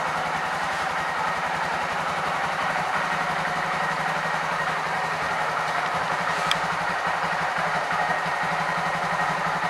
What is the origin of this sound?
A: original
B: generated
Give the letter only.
B